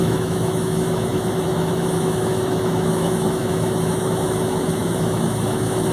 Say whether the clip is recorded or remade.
remade